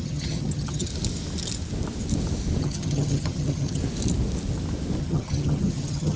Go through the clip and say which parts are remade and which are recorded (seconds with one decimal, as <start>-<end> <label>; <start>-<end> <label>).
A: 0.0-0.9 remade; 0.9-2.6 recorded; 2.6-3.8 remade; 3.8-5.0 recorded; 5.0-6.2 remade